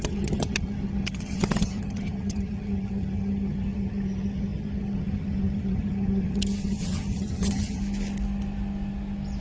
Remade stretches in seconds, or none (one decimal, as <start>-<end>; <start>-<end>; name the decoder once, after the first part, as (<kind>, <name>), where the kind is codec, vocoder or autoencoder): 0.0-7.8 (vocoder, HiFi-GAN)